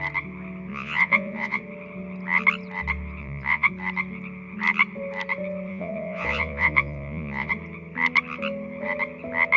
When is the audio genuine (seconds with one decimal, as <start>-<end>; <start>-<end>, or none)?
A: 0.0-0.7; 1.6-3.2; 3.7-5.7; 7.5-9.6